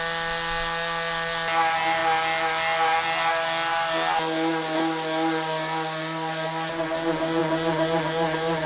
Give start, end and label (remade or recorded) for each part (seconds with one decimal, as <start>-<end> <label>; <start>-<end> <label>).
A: 0.0-8.7 recorded